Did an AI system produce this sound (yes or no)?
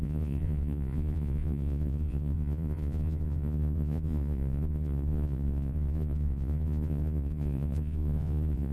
yes